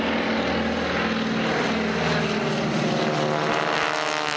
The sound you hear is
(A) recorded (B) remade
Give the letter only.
A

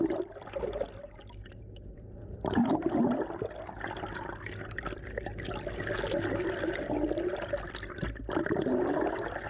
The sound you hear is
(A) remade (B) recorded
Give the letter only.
B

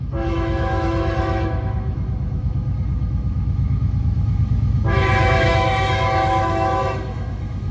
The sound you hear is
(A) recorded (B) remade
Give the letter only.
B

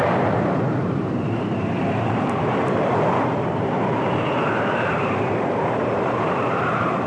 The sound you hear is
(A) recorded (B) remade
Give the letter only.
B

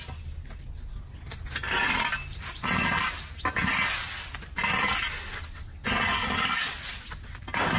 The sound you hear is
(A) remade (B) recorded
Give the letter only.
B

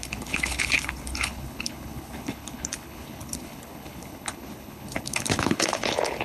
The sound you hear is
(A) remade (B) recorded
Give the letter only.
A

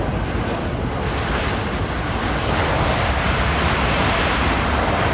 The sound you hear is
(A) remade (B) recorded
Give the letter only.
B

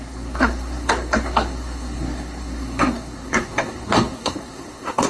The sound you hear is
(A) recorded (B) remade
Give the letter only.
B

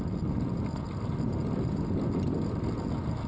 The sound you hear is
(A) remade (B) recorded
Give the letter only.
B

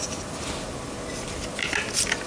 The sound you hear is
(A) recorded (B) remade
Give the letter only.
A